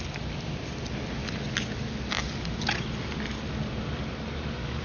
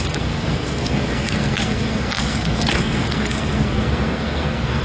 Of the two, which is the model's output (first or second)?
second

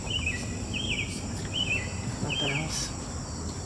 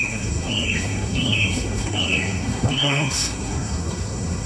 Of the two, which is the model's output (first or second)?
second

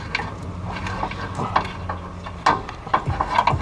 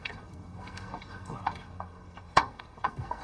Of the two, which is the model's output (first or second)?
second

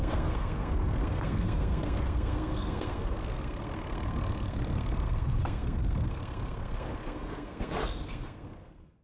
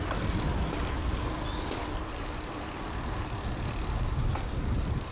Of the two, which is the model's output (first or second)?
first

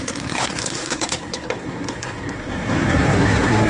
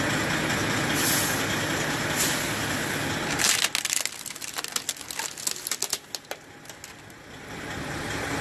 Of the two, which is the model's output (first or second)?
first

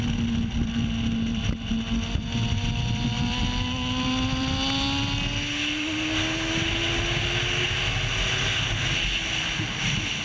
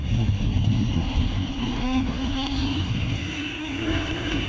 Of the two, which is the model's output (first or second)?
second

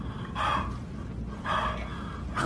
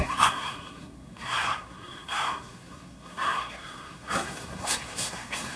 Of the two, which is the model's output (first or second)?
second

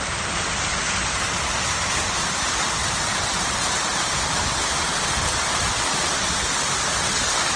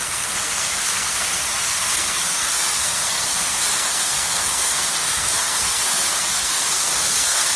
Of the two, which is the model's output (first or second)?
second